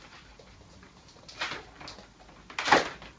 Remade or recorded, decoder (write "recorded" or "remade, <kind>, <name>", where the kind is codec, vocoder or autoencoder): recorded